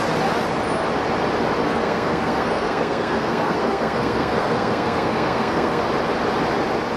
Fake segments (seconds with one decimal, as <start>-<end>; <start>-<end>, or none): 1.6-5.8